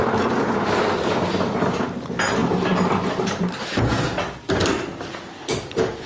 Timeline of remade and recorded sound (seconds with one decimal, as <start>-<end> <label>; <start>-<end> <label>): 0.0-6.1 recorded